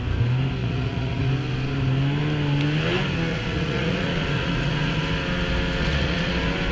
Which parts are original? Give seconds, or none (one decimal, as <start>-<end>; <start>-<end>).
0.0-0.6; 1.3-3.3; 5.0-5.8; 6.3-6.7